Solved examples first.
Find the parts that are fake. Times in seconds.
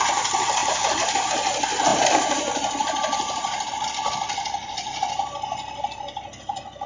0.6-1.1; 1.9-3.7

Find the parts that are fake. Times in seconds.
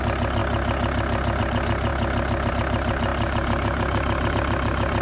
0.0-0.4; 1.4-1.9; 2.5-5.0